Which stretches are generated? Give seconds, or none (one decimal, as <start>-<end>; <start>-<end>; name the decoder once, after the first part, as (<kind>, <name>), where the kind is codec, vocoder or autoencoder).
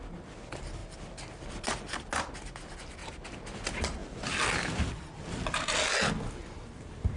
none